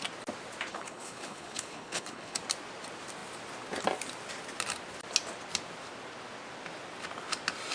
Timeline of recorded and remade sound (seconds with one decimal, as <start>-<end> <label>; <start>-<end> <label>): 0.0-0.7 recorded; 0.7-2.4 remade; 2.4-7.7 recorded